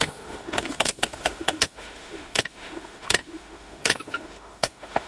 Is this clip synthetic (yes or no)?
yes